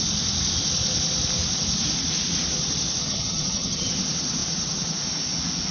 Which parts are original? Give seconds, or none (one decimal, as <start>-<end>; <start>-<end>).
0.0-3.0; 3.9-5.7